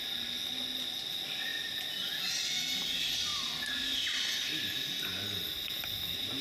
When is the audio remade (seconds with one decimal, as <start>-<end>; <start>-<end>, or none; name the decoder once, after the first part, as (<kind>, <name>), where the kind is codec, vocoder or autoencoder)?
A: none